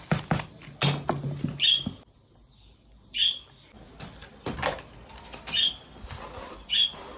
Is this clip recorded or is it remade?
recorded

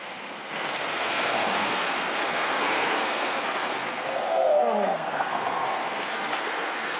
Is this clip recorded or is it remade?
remade